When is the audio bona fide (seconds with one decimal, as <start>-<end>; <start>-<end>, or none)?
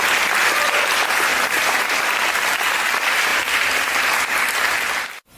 0.0-1.3; 2.0-3.3; 4.4-5.4